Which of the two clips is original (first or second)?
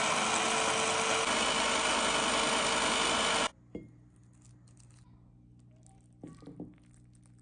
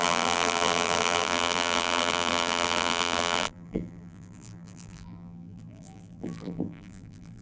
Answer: first